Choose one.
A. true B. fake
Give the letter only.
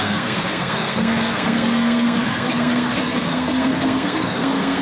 B